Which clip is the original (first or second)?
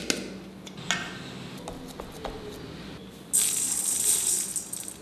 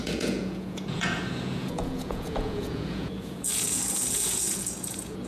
first